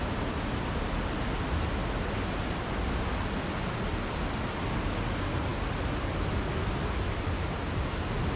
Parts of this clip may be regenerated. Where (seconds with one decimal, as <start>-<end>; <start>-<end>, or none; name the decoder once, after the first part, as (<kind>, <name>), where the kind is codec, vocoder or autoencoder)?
3.9-4.6 (vocoder, BigVGAN v2)